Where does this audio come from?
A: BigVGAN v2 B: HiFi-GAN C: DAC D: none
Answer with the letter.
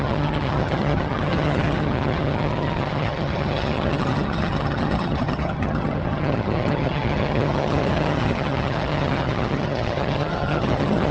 B